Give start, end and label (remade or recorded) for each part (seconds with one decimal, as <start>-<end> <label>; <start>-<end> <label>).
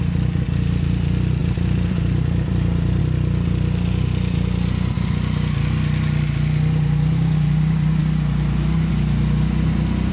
0.0-1.4 recorded; 1.4-3.0 remade; 3.0-10.1 recorded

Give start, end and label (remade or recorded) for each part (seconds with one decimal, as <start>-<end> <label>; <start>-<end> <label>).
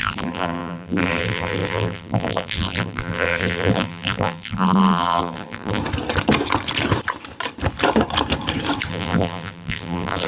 0.0-5.8 remade; 5.8-8.9 recorded; 8.9-10.3 remade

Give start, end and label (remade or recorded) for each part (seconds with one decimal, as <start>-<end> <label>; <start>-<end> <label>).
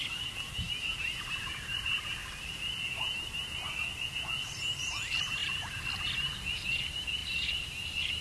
0.0-2.2 remade; 2.2-4.4 recorded; 4.4-5.4 remade; 5.4-6.5 recorded; 6.5-8.2 remade